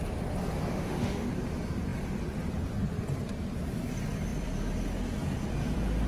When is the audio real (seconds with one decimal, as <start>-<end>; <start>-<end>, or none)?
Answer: 0.0-0.7; 1.3-6.1